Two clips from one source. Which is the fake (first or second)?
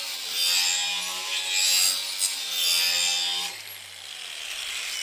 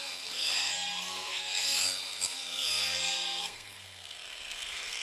second